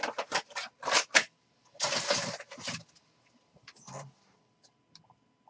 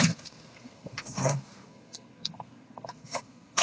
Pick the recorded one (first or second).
first